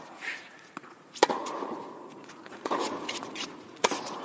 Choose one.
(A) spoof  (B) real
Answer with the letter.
A